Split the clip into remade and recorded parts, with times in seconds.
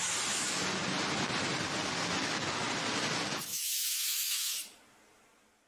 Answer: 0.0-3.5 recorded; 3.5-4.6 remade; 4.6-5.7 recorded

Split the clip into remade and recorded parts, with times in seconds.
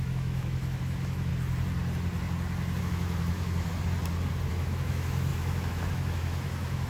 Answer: 0.0-1.3 remade; 1.3-2.8 recorded; 2.8-3.7 remade; 3.7-4.5 recorded; 4.5-6.9 remade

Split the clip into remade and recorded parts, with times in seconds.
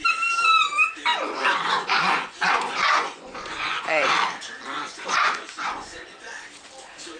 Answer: 0.0-1.1 recorded; 1.1-4.1 remade; 4.1-4.8 recorded; 4.8-6.3 remade; 6.3-7.2 recorded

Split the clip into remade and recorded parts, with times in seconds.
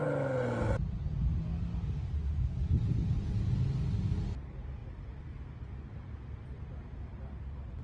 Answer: 0.0-7.8 recorded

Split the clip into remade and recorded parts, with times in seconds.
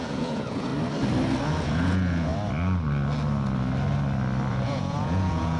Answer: 0.0-0.7 remade; 0.7-1.4 recorded; 1.4-2.3 remade; 2.3-4.5 recorded; 4.5-5.6 remade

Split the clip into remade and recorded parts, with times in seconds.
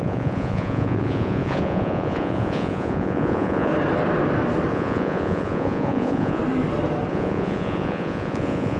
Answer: 0.0-3.7 remade; 3.7-4.7 recorded; 4.7-6.4 remade; 6.4-7.1 recorded; 7.1-8.8 remade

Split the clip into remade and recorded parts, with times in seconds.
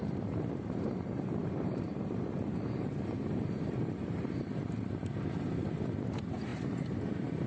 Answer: 0.0-7.5 remade